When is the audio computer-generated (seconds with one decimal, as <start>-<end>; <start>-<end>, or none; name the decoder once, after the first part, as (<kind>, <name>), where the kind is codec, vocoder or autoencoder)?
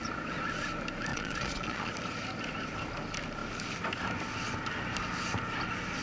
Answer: 1.1-1.9 (vocoder, Vocos)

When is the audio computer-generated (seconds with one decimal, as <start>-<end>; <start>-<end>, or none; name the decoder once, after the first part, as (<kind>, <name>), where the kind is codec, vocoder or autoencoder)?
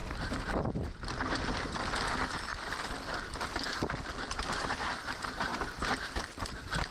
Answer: none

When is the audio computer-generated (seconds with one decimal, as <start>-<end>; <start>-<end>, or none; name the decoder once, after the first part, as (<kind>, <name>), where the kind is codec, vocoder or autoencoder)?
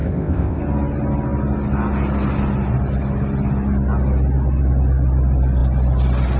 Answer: 0.0-0.6 (codec, ZipCodec)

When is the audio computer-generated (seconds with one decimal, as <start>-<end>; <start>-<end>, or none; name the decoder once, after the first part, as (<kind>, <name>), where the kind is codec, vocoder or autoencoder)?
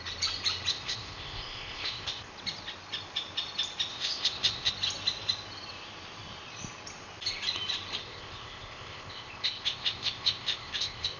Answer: 0.7-2.3 (codec, ZipCodec); 3.9-4.7; 8.0-11.2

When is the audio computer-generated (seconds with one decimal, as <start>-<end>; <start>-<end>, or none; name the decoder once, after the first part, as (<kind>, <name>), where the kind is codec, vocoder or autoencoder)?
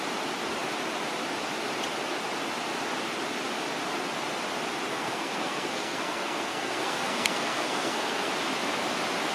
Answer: 4.9-8.3 (codec, SNAC)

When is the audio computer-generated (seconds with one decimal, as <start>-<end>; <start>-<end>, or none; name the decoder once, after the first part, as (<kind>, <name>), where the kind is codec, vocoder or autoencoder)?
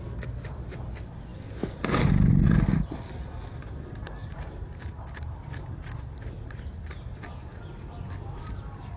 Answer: 4.2-7.1 (vocoder, BigVGAN v2)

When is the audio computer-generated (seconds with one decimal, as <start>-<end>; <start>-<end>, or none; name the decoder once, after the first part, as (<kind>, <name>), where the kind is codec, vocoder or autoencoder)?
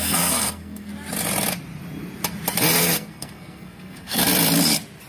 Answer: 0.0-0.9 (codec, SNAC); 2.8-4.2